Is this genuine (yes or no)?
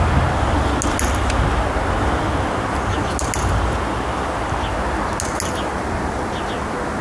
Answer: yes